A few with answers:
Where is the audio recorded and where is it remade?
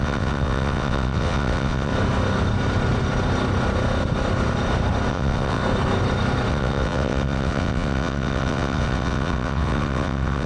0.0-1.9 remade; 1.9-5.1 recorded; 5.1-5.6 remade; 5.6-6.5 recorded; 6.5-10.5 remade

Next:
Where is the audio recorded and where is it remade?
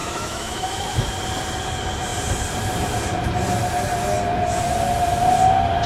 0.0-1.1 remade; 1.1-5.9 recorded